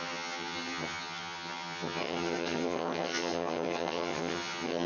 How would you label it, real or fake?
fake